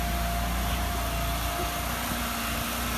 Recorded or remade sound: recorded